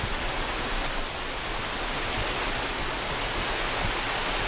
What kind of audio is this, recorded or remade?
recorded